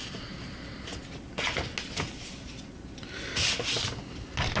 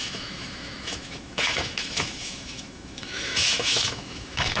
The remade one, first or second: second